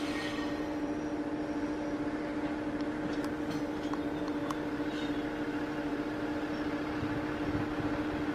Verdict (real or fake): real